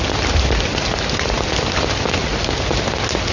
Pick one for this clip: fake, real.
real